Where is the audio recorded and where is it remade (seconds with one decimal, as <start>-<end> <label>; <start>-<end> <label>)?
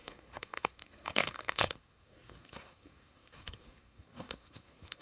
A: 0.0-5.0 remade